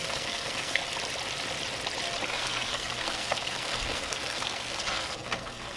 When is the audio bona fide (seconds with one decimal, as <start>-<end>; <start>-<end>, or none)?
0.8-2.3